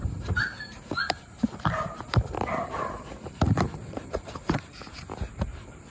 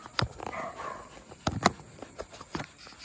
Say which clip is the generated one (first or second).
first